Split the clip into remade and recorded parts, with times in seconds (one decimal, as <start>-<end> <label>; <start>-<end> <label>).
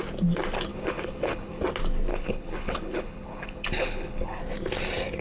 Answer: 0.0-0.7 recorded; 0.7-1.6 remade; 1.6-2.1 recorded; 2.1-4.4 remade; 4.4-5.2 recorded